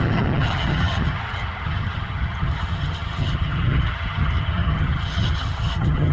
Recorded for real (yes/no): no